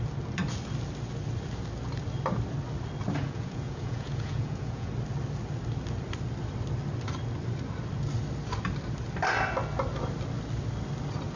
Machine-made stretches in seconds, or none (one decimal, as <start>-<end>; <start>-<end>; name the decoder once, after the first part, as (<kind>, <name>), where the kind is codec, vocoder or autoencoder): 3.2-4.9 (vocoder, Vocos)